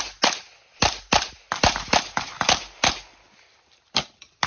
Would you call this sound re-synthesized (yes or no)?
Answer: no